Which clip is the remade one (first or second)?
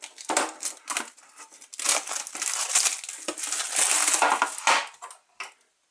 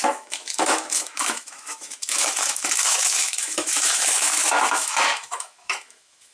second